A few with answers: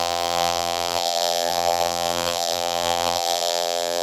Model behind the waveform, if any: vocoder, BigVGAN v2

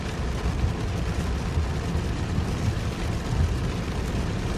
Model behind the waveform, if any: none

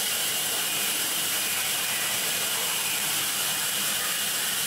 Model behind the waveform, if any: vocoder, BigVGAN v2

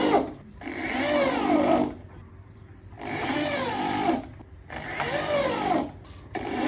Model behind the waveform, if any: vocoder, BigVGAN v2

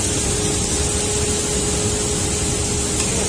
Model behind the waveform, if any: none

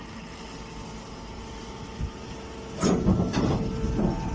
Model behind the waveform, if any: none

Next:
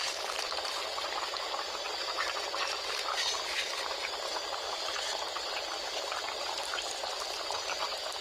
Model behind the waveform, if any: vocoder, BigVGAN v2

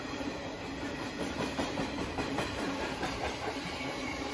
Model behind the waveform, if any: vocoder, BigVGAN v2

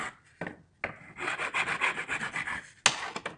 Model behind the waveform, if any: none